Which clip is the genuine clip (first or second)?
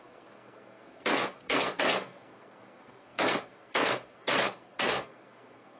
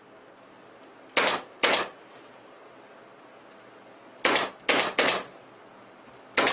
second